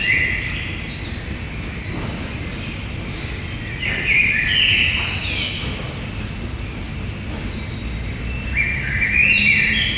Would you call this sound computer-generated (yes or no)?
no